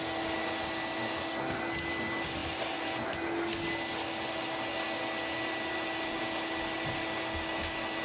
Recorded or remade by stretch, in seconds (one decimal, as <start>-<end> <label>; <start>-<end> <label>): 0.0-8.0 recorded